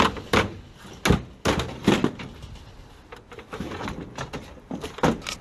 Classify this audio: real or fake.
real